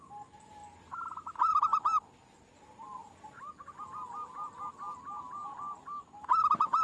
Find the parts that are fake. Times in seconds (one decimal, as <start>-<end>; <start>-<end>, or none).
none